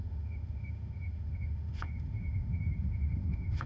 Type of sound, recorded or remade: remade